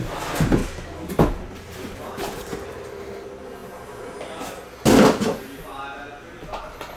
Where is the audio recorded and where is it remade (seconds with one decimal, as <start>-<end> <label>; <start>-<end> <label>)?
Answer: 0.0-7.0 recorded